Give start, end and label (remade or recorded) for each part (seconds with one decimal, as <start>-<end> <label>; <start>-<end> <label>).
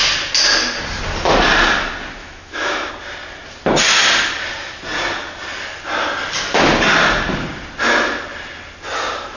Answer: 0.0-2.2 recorded; 2.2-2.9 remade; 2.9-9.4 recorded